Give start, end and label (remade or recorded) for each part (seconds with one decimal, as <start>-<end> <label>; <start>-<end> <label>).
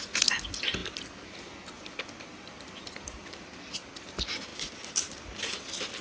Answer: 0.0-6.0 recorded